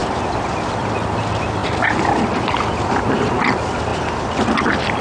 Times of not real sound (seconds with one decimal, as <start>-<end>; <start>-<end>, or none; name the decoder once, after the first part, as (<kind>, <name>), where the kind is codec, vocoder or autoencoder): 0.0-3.9 (vocoder, BigVGAN v2); 4.6-5.0